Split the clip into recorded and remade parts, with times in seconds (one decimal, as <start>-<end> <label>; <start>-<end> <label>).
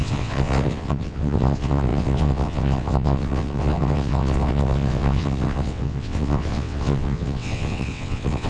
0.0-8.5 remade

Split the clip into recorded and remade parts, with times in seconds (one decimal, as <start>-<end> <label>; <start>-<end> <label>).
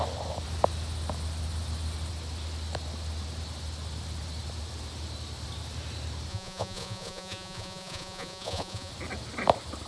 0.0-6.3 recorded; 6.3-8.9 remade; 8.9-9.9 recorded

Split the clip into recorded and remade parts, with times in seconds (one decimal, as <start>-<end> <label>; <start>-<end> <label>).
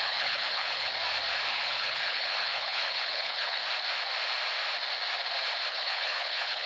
0.0-0.9 remade; 0.9-1.5 recorded; 1.5-3.6 remade; 3.6-5.7 recorded; 5.7-6.7 remade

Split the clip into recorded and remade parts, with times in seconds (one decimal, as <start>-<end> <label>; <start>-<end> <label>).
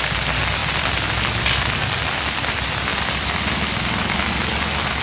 0.0-5.0 recorded